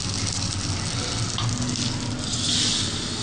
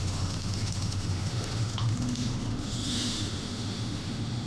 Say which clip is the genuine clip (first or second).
first